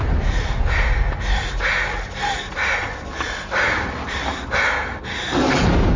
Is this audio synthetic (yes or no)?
no